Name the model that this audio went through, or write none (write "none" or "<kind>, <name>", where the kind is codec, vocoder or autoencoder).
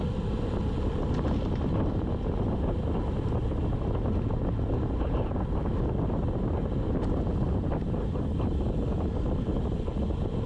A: none